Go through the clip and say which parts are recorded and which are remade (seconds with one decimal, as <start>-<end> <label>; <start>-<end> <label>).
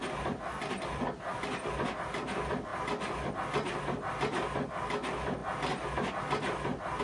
0.0-7.0 recorded